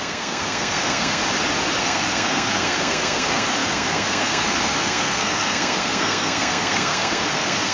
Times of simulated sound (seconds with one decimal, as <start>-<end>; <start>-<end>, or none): 0.0-1.2; 1.8-7.7